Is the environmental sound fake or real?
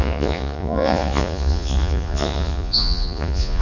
fake